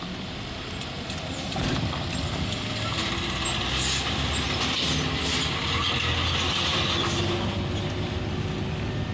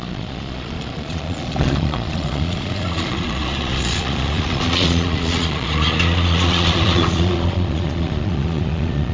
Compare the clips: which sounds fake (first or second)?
second